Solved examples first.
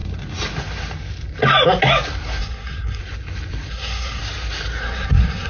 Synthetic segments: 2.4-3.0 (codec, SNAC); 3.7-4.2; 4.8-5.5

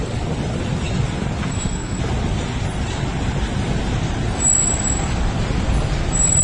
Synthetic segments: 1.5-2.0 (codec, SNAC)

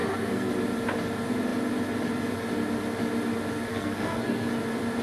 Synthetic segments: 0.0-0.5 (codec, SNAC); 3.7-4.5

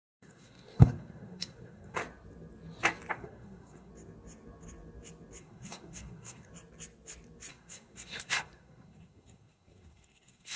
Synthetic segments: 0.0-2.0 (codec, SNAC); 3.1-3.9; 5.4-6.5; 7.5-10.6

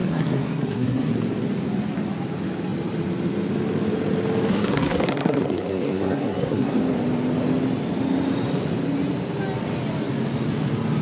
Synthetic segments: 0.0-1.1 (codec, SNAC); 4.5-6.8

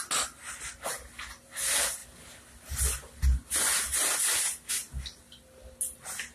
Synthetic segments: none

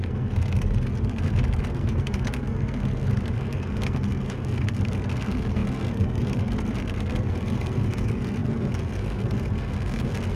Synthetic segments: 0.0-10.4 (codec, SNAC)

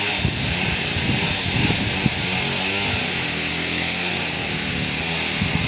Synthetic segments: 3.5-4.1 (codec, SNAC)